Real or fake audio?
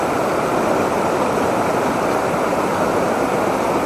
real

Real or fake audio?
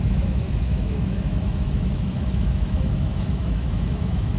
fake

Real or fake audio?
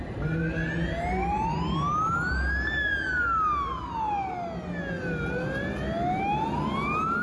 real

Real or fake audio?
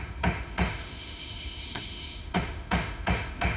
fake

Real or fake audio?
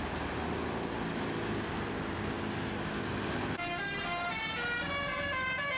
real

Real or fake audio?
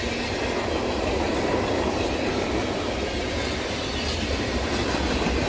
real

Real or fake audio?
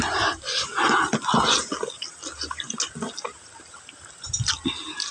real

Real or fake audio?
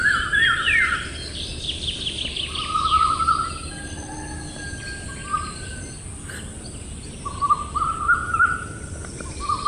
real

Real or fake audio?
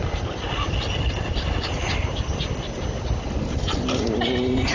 real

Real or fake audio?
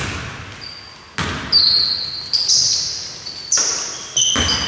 real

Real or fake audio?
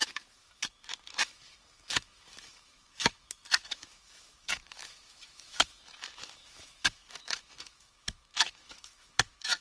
fake